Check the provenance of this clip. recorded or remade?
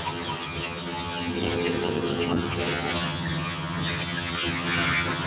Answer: remade